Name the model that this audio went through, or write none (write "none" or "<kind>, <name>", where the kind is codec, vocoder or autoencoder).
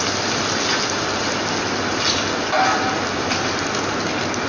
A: none